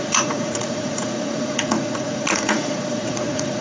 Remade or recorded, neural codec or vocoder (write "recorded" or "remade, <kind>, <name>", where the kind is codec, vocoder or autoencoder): remade, vocoder, Vocos